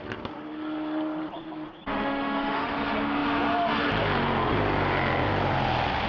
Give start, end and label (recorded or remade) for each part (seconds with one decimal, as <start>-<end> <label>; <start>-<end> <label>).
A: 0.0-1.9 recorded; 1.9-2.7 remade; 2.7-6.1 recorded

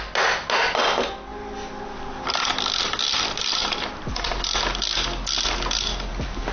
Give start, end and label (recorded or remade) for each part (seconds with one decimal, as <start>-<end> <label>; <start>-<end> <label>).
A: 0.0-6.5 recorded

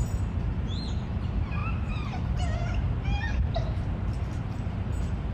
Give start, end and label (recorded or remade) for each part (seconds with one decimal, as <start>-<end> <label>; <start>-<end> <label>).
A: 0.0-5.3 recorded

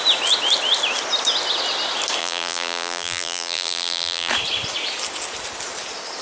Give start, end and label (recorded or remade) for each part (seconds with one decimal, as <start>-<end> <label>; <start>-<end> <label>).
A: 0.0-2.2 recorded; 2.2-4.3 remade; 4.3-6.2 recorded